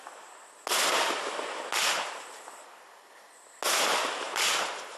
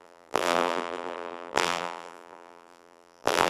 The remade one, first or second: second